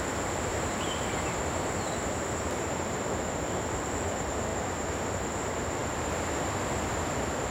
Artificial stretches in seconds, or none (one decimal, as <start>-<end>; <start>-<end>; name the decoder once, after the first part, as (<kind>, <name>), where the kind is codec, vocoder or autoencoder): 0.5-3.0 (vocoder, BigVGAN v2); 4.5-5.3; 5.8-6.6